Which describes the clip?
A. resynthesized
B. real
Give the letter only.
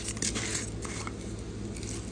B